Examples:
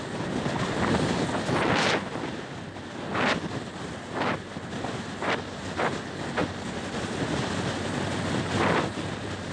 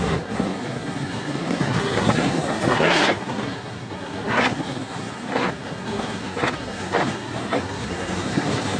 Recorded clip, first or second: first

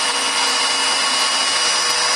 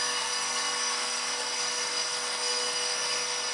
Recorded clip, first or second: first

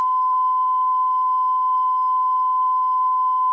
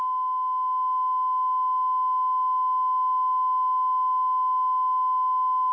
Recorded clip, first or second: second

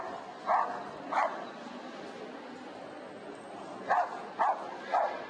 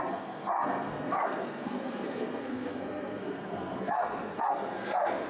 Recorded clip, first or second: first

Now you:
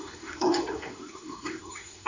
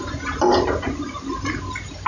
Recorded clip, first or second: second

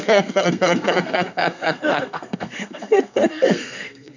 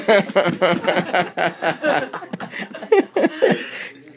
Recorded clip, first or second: second